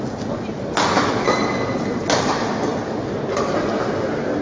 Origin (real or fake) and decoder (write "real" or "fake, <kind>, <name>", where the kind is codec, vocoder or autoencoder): real